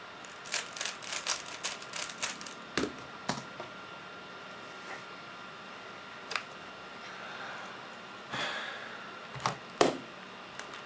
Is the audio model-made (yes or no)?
no